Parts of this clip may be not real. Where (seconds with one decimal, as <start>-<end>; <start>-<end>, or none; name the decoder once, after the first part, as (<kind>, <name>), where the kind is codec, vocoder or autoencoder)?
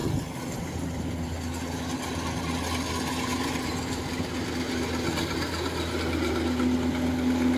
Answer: none